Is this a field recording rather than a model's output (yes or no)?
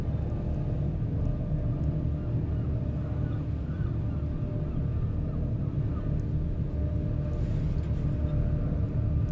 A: yes